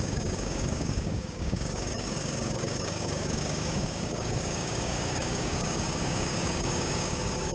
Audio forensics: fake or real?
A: fake